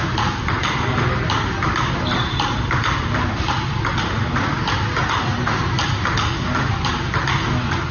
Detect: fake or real real